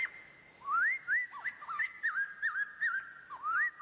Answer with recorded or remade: recorded